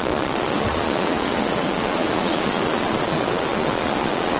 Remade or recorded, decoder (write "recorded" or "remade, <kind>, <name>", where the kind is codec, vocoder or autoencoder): remade, vocoder, Vocos